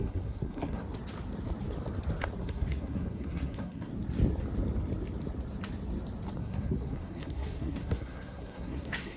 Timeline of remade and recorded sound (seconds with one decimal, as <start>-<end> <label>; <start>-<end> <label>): 0.0-0.8 remade; 0.8-2.4 recorded; 2.4-3.9 remade; 3.9-6.4 recorded; 6.4-9.2 remade